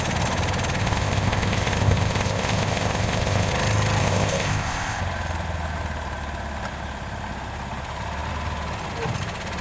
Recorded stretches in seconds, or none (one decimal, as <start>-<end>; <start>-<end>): 0.0-0.8; 3.5-4.0; 5.0-9.6